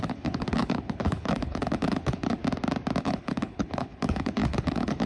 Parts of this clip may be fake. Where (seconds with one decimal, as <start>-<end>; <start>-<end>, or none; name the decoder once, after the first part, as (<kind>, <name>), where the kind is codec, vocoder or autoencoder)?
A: 0.0-2.4 (codec, HILCodec); 3.0-5.1